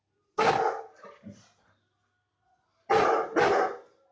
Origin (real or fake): real